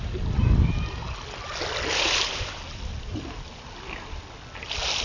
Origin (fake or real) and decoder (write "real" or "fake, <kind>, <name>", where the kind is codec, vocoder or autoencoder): real